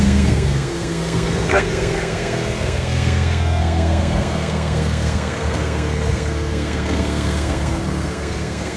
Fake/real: fake